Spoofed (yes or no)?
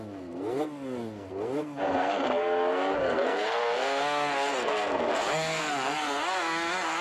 yes